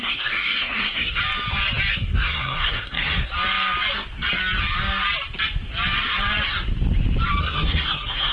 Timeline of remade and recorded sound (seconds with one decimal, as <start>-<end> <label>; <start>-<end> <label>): 0.0-1.2 remade; 1.2-1.9 recorded; 1.9-3.3 remade; 3.3-7.4 recorded; 7.4-8.3 remade